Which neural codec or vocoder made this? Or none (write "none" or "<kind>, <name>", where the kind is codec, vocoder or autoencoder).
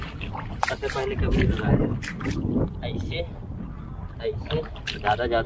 none